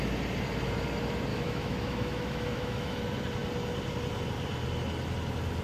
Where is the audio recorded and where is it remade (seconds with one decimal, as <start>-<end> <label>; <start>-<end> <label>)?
0.0-1.3 recorded; 1.3-3.0 remade; 3.0-5.6 recorded